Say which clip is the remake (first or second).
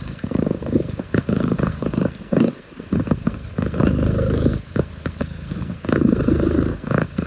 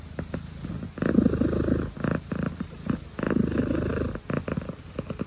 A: first